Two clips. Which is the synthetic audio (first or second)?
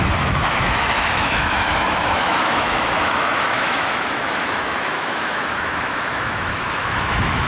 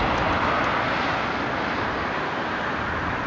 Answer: first